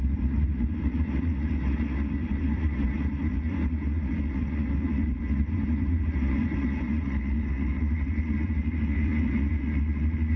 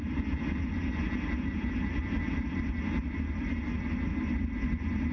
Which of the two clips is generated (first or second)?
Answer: first